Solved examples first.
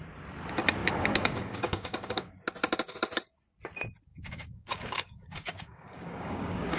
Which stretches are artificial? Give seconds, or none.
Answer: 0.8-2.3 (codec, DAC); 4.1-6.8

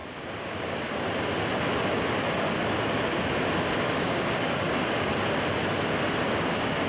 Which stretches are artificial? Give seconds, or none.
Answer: 3.8-5.1 (codec, DAC); 6.3-6.9

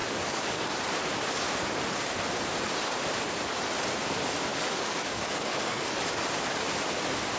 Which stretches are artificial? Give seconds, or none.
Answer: 0.0-0.7 (codec, DAC); 4.5-6.0

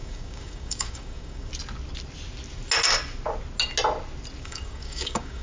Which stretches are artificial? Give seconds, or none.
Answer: 0.0-1.5 (codec, DAC); 4.4-5.4

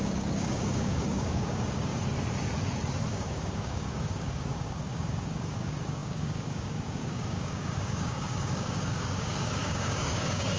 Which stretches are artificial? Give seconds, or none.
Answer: 0.0-2.0 (codec, DAC); 3.1-10.6

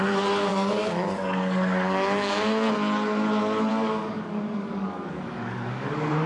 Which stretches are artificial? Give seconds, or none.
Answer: 0.5-2.7 (codec, DAC); 3.7-6.3